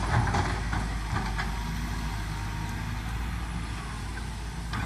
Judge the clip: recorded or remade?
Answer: recorded